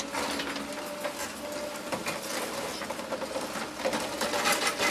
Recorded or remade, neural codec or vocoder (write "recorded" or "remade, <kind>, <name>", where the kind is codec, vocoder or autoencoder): recorded